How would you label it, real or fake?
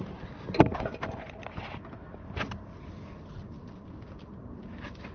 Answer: real